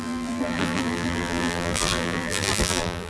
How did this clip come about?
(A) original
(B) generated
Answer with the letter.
B